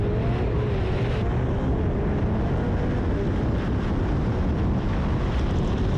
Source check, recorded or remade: recorded